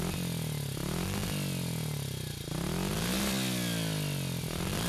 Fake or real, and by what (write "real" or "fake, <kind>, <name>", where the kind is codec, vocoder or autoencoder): real